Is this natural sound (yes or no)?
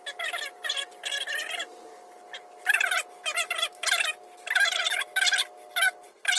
yes